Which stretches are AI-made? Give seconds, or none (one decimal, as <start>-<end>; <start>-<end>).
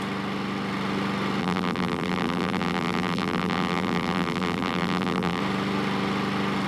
1.4-5.4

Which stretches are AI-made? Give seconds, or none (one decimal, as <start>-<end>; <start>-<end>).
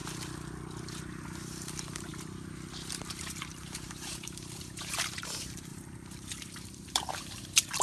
1.0-2.1; 2.7-7.8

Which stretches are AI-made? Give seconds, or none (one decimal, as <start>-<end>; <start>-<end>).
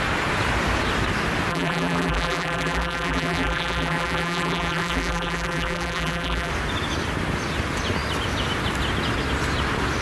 1.5-6.5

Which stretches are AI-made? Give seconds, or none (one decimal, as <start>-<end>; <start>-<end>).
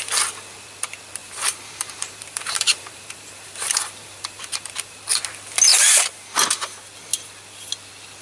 1.2-5.0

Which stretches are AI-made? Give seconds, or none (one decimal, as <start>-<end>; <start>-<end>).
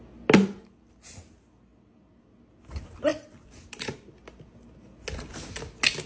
none